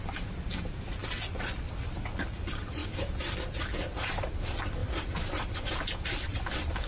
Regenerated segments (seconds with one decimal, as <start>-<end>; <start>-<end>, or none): 0.0-1.0; 2.3-2.8; 4.0-6.9